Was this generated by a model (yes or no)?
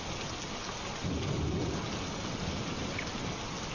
no